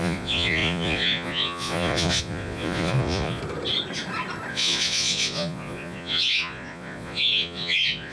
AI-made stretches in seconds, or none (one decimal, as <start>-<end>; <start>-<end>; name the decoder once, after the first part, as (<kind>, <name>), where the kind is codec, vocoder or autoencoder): 0.0-3.4 (vocoder, Vocos); 4.5-8.1